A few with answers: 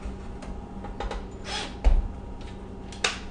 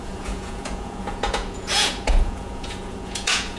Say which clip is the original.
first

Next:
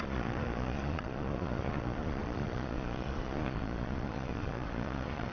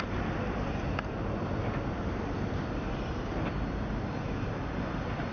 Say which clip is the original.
second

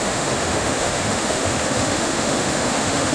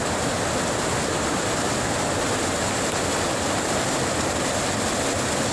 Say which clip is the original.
second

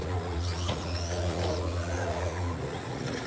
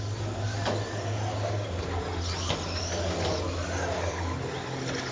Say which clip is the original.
second